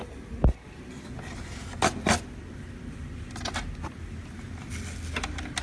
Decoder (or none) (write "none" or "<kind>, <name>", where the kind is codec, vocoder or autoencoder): none